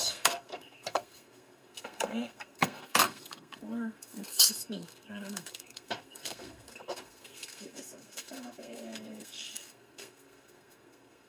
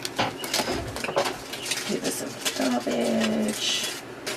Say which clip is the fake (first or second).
first